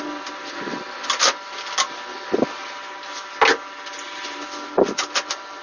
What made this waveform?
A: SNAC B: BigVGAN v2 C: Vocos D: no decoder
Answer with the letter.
D